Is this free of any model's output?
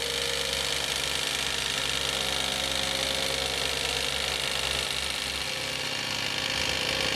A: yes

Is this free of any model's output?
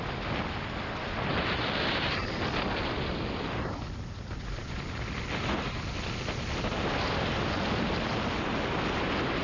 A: yes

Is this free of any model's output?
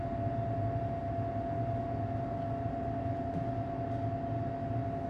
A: yes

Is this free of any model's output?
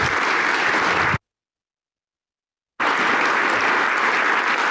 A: yes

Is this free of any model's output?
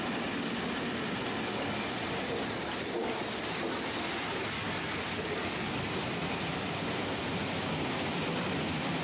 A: yes